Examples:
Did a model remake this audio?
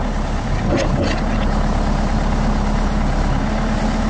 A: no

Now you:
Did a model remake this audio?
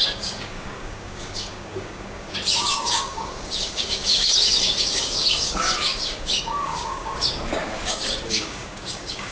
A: yes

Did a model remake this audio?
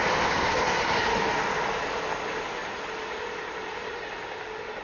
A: no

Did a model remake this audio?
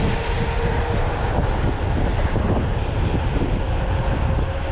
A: no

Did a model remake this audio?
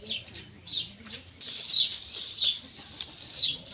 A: no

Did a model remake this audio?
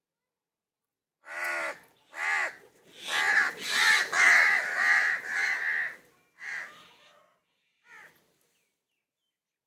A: no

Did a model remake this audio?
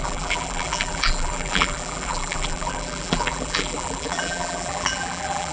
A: yes